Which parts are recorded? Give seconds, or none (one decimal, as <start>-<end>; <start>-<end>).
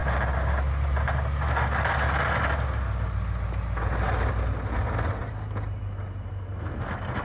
0.0-7.2